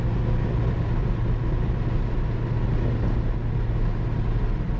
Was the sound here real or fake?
real